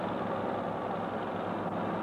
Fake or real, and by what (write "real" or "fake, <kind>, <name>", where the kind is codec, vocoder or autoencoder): real